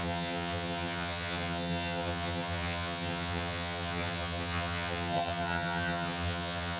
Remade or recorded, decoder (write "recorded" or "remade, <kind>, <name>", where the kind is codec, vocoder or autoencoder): remade, vocoder, HiFi-GAN